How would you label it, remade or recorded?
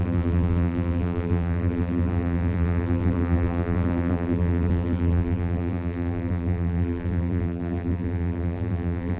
remade